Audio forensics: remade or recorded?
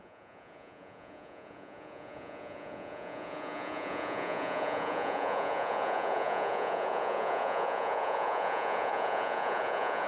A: remade